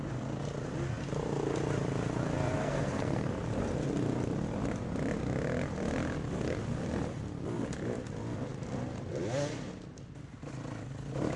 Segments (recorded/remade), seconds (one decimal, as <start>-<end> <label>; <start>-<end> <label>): 0.0-2.6 recorded; 2.6-3.3 remade; 3.3-11.4 recorded